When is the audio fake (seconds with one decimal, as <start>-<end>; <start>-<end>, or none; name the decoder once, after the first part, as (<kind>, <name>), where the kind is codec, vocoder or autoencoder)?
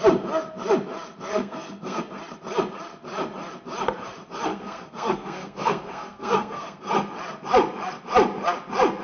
1.3-2.0 (codec, SNAC); 4.5-6.9